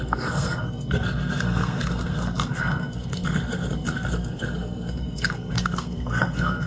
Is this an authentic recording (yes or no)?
no